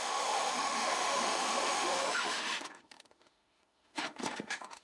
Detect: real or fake fake